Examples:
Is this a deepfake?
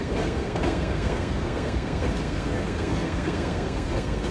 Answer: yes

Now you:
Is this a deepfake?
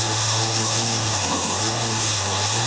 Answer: yes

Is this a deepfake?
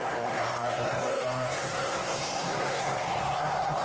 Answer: yes